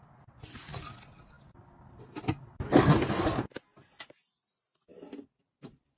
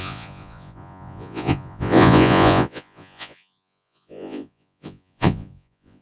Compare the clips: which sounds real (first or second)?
first